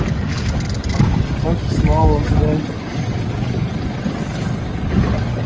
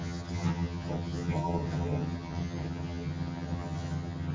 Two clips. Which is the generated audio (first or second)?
second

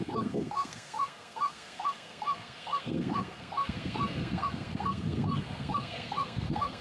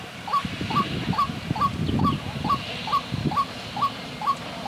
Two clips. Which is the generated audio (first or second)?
first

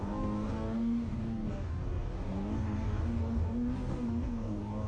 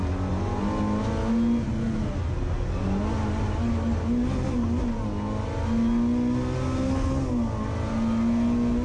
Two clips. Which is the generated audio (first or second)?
first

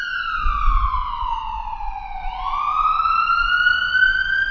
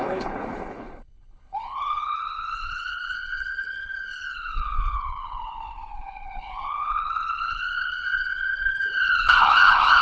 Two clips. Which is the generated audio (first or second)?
second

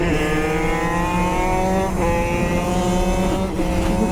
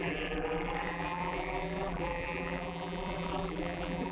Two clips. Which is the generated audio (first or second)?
second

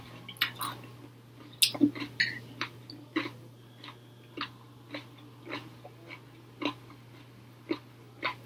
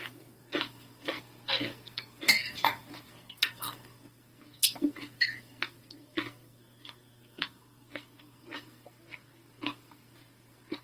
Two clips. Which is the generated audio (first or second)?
second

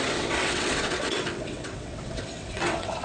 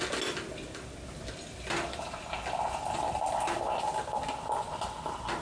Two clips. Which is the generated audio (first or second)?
first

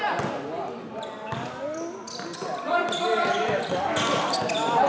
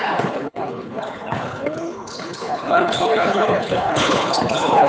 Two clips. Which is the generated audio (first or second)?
second